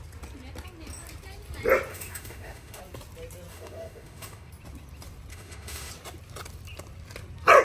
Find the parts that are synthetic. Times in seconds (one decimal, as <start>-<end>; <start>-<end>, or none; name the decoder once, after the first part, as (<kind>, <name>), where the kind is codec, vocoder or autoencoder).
1.9-2.8 (autoencoder, DAC-VAE); 3.5-4.5; 5.3-5.9